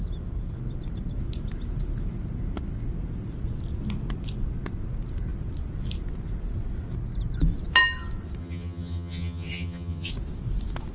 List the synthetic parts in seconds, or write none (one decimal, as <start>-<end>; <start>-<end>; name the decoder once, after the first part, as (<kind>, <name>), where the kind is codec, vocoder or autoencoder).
8.4-10.1 (vocoder, HiFi-GAN)